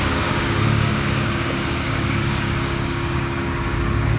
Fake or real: fake